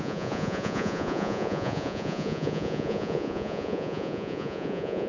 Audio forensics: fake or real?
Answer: fake